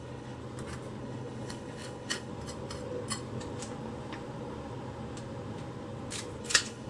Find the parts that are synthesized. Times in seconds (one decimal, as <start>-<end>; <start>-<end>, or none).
0.0-0.4; 1.0-2.3; 6.4-6.9